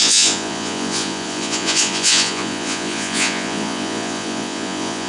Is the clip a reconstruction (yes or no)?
yes